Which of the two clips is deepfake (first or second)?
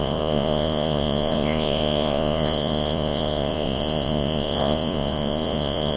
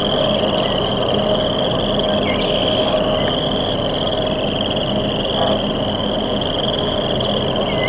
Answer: first